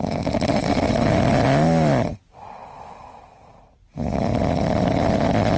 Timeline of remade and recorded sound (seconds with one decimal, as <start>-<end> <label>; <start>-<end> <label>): 0.0-5.6 recorded